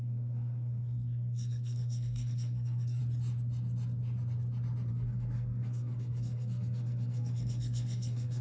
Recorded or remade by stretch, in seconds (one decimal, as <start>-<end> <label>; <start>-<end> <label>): 0.0-3.0 remade; 3.0-4.9 recorded; 4.9-8.4 remade